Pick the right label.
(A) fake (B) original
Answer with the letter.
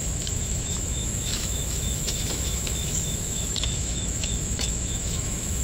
A